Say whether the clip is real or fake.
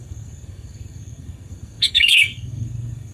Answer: fake